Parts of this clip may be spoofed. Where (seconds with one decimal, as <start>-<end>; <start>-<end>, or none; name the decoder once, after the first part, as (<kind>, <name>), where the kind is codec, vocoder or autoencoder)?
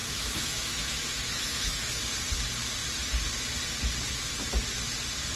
0.0-2.0 (autoencoder, DAC-VAE)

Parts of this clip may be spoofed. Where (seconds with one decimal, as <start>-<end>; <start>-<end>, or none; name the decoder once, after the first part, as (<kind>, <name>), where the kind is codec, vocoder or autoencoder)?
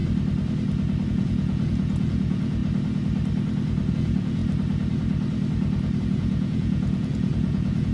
1.1-2.6 (vocoder, Vocos); 3.9-4.4; 6.0-7.9